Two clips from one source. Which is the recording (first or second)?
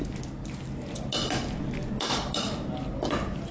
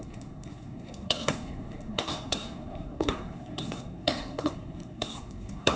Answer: first